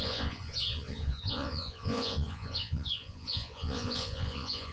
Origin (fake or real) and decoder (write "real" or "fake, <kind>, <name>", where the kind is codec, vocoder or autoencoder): fake, vocoder, Vocos